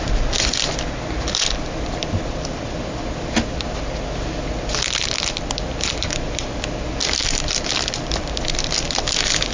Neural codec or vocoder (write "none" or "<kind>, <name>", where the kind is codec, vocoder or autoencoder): none